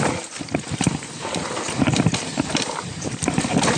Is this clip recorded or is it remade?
recorded